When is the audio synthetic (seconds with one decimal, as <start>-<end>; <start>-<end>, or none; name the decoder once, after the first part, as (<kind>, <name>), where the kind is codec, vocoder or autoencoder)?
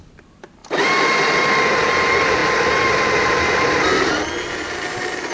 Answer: 0.0-0.6 (vocoder, BigVGAN v2); 1.7-2.4; 3.3-3.9